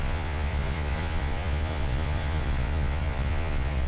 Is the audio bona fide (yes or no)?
no